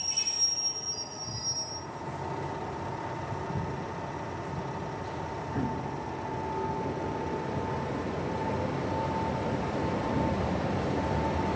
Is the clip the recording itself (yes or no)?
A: yes